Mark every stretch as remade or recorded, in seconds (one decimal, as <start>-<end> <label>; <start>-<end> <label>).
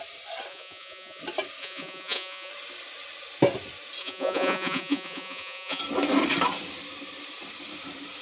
0.0-0.5 recorded; 0.5-1.2 remade; 1.2-1.6 recorded; 1.6-2.5 remade; 2.5-4.0 recorded; 4.0-5.8 remade; 5.8-8.2 recorded